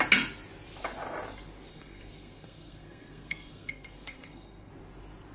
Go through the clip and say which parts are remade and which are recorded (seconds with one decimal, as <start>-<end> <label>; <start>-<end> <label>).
0.0-1.7 recorded; 1.7-4.7 remade; 4.7-5.3 recorded